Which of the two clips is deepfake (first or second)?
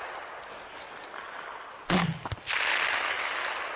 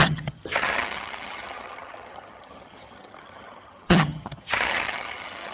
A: second